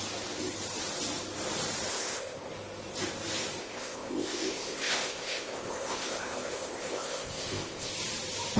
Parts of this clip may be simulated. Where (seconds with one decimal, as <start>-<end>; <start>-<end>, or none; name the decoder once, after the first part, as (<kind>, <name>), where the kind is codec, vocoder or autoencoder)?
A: 1.9-2.5 (codec, ZipCodec); 3.6-7.9